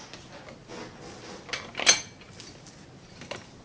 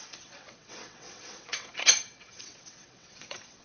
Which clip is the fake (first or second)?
second